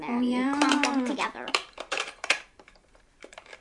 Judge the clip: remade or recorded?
remade